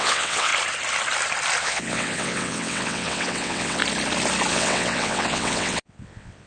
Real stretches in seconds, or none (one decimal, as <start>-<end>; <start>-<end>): 0.5-1.6; 3.8-4.5